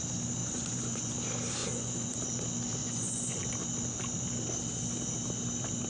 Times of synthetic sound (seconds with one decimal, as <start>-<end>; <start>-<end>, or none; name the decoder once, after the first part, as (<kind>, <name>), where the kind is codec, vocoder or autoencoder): 0.4-1.1 (vocoder, Vocos); 1.6-2.4; 2.8-3.5